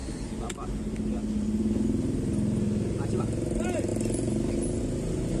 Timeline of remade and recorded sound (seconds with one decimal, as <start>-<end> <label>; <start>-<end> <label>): 0.0-5.4 recorded